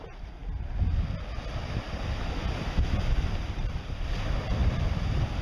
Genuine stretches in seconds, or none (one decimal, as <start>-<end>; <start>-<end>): 0.4-3.6; 4.6-5.4